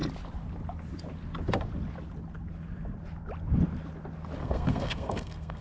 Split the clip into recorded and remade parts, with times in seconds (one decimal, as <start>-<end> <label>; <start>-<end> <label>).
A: 0.0-4.4 recorded; 4.4-5.6 remade

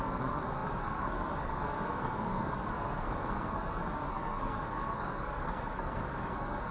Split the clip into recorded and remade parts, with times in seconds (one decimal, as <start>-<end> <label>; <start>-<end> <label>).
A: 0.0-6.7 remade

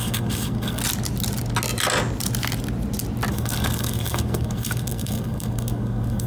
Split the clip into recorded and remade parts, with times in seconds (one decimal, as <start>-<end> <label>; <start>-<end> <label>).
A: 0.0-0.8 remade; 0.8-3.3 recorded; 3.3-6.3 remade

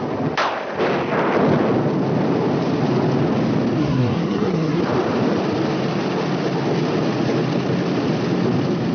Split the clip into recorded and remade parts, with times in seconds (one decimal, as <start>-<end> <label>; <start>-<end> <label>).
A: 0.0-3.8 recorded; 3.8-4.8 remade; 4.8-8.9 recorded

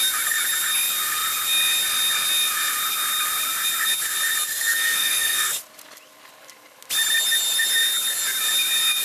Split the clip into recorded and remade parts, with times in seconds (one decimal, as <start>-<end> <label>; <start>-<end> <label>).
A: 0.0-4.5 recorded; 4.5-5.6 remade; 5.6-9.0 recorded